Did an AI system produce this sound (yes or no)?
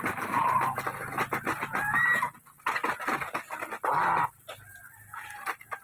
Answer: no